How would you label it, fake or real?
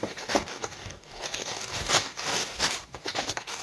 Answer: fake